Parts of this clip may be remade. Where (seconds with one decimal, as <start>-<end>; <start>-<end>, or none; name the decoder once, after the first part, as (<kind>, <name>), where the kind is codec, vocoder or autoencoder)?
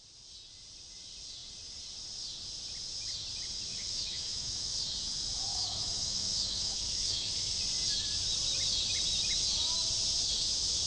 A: 3.7-4.8 (autoencoder, DAC-VAE); 5.5-7.6